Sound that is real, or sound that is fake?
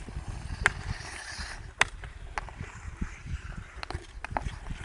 real